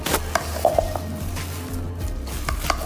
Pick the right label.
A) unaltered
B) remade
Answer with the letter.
A